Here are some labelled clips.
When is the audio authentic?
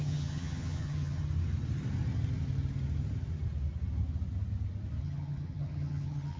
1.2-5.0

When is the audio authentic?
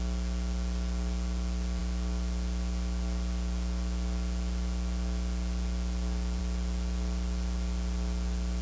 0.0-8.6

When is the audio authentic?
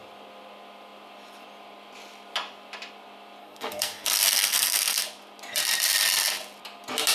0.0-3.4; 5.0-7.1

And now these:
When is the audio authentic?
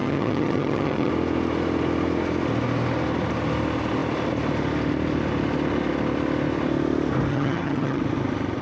1.1-7.3; 8.0-8.6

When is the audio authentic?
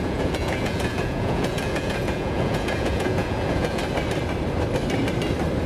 3.8-5.7